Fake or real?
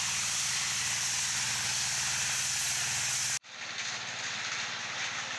real